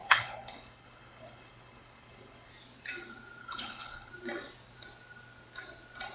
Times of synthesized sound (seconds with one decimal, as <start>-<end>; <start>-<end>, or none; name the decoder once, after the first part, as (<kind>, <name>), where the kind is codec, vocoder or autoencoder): 0.0-2.5 (codec, HILCodec); 3.4-4.1